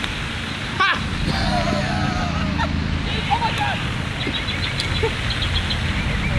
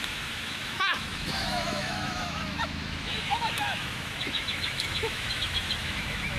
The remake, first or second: second